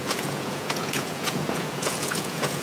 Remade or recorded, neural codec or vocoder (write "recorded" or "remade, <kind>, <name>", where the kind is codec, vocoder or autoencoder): remade, vocoder, Vocos